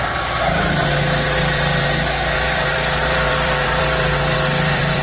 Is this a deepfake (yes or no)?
yes